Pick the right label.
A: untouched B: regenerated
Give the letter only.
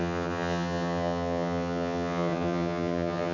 B